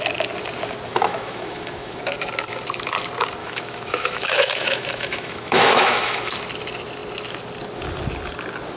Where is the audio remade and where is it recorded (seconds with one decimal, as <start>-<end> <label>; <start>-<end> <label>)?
0.0-0.9 recorded; 0.9-2.0 remade; 2.0-3.4 recorded; 3.4-6.4 remade; 6.4-8.8 recorded